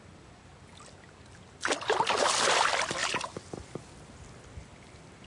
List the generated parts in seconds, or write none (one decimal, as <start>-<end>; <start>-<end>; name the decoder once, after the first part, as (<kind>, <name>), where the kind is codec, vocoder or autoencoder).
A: none